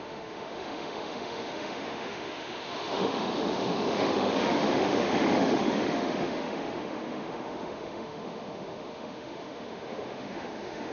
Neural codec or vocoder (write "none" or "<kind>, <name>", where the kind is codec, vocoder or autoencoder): autoencoder, DAC-VAE